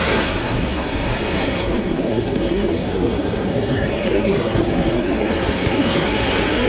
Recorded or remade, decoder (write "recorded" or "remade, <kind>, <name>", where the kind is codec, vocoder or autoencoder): remade, codec, SNAC